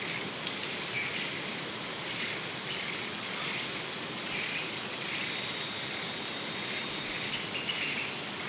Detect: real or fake real